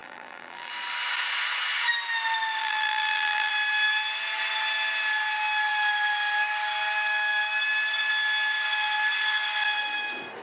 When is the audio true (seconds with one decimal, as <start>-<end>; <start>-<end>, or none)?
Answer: 0.7-2.6; 3.5-10.4